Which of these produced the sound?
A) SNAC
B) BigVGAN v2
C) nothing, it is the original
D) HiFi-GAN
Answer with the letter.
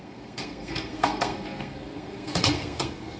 A